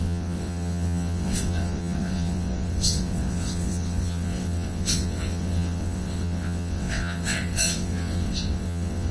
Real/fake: fake